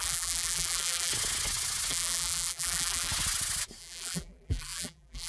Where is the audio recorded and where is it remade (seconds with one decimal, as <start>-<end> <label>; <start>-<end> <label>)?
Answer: 0.0-1.1 remade; 1.1-1.9 recorded; 1.9-3.1 remade; 3.1-3.8 recorded; 3.8-5.3 remade

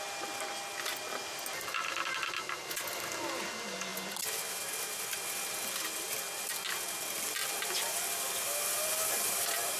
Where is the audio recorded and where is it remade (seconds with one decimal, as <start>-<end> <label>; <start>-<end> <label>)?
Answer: 0.0-0.9 recorded; 0.9-2.6 remade; 2.6-3.9 recorded; 3.9-4.4 remade; 4.4-9.8 recorded

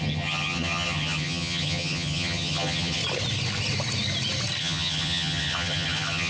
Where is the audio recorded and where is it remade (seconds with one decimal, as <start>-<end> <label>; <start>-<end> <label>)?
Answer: 0.0-3.0 remade; 3.0-4.6 recorded; 4.6-6.3 remade